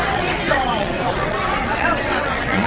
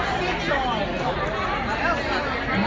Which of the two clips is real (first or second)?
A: second